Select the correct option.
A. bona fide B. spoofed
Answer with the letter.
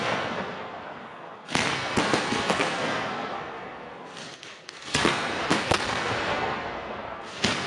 B